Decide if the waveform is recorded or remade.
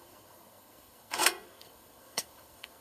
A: remade